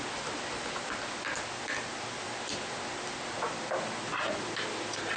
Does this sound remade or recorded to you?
recorded